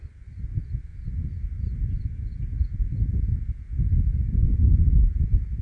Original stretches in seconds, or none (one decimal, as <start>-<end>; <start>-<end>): 0.0-5.6